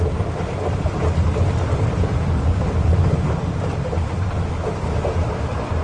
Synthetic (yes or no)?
yes